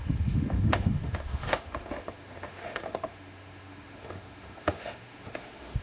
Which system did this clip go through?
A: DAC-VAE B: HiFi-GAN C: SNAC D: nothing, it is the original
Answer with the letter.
A